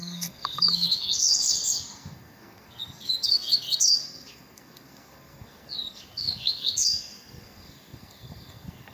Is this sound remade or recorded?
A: remade